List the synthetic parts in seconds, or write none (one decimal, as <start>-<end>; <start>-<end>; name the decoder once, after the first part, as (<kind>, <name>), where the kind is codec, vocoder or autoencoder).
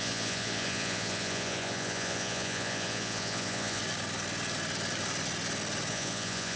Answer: 0.0-3.8 (vocoder, Vocos); 5.9-6.6